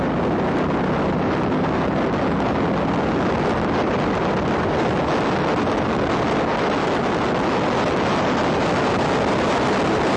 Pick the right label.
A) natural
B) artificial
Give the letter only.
A